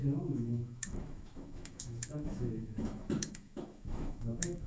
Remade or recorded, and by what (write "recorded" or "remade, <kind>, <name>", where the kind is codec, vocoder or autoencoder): remade, autoencoder, DAC-VAE